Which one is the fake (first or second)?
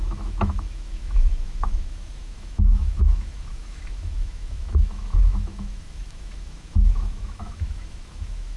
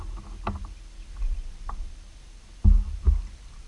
first